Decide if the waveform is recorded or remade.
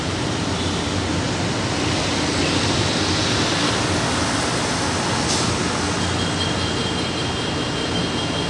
recorded